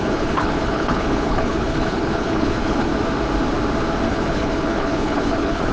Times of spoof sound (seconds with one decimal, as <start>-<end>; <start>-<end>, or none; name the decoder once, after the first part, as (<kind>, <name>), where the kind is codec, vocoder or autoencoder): 0.0-2.9 (codec, HILCodec); 4.1-5.7